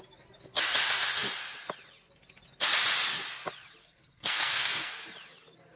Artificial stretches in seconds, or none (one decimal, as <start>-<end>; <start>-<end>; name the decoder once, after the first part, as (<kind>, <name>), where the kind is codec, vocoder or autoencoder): 3.8-4.9 (codec, SNAC)